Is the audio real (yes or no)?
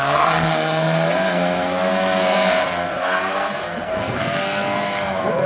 no